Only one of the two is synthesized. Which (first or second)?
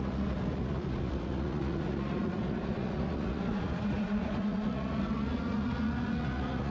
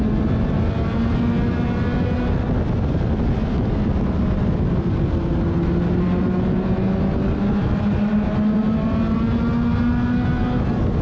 first